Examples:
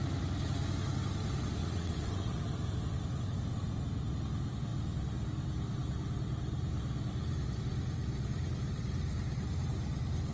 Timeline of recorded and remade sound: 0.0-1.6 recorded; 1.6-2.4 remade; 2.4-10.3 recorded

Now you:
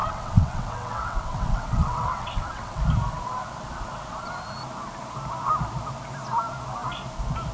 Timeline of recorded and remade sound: 0.0-2.8 remade; 2.8-7.5 recorded

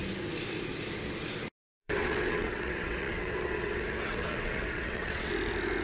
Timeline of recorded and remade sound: 0.0-1.8 recorded; 1.8-5.3 remade; 5.3-5.8 recorded

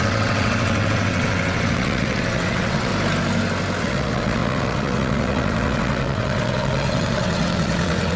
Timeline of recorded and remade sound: 0.0-2.9 remade; 2.9-3.8 recorded; 3.8-8.2 remade